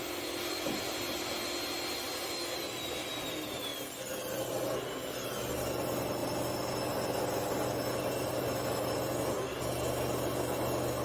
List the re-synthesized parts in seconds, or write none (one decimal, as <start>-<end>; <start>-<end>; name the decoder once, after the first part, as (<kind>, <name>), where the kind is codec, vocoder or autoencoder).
none